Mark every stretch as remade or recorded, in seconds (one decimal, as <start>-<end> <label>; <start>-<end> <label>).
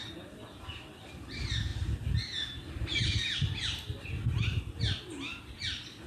0.0-6.1 recorded